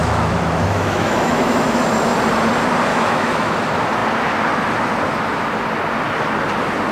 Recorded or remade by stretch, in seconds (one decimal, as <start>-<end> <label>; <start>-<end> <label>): 0.0-1.8 remade; 1.8-2.9 recorded; 2.9-3.6 remade; 3.6-6.9 recorded